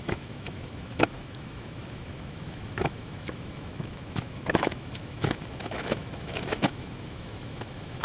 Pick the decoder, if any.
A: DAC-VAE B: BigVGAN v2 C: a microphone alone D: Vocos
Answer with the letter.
A